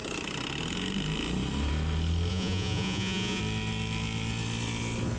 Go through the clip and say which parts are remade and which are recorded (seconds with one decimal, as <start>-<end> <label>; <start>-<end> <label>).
0.0-2.3 recorded; 2.3-3.4 remade; 3.4-5.2 recorded